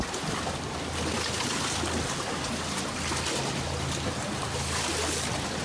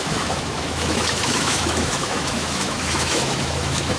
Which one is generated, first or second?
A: second